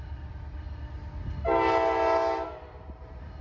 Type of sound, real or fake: real